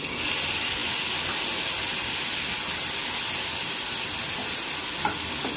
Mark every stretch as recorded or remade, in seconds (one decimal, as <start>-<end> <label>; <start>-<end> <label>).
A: 0.0-5.6 recorded